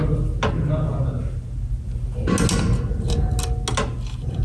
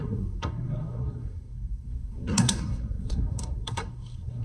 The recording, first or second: first